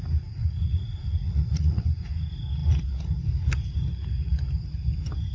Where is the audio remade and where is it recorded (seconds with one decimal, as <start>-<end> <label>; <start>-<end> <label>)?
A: 0.0-0.4 recorded; 0.4-2.1 remade; 2.1-5.3 recorded